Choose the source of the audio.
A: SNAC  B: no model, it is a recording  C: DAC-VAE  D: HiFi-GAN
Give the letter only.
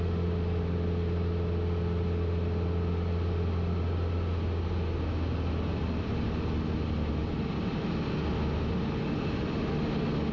B